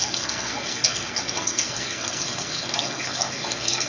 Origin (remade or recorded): remade